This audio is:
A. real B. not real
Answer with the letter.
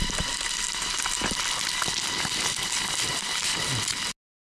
A